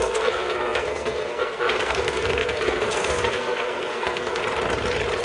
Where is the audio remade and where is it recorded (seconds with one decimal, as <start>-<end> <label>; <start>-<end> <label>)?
0.0-4.4 remade; 4.4-5.2 recorded